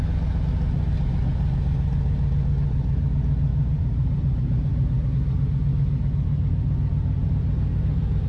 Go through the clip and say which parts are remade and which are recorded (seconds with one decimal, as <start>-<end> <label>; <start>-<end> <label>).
0.0-3.5 recorded; 3.5-5.1 remade; 5.1-8.3 recorded